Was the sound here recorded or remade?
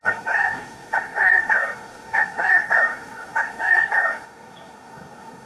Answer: remade